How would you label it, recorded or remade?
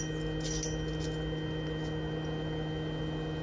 recorded